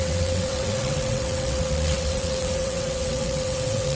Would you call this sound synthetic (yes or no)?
yes